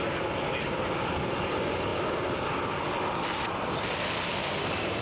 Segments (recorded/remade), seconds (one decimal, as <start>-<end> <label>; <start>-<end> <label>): 0.0-5.0 recorded